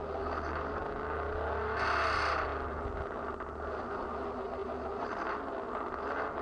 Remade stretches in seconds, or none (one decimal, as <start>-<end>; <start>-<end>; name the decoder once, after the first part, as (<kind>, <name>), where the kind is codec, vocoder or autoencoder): none